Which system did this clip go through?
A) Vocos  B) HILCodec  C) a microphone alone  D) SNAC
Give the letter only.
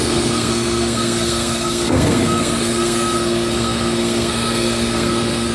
D